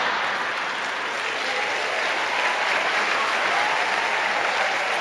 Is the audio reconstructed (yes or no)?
no